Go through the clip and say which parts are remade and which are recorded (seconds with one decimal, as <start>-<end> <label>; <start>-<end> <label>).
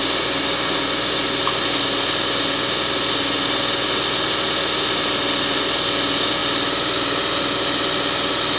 0.0-8.6 recorded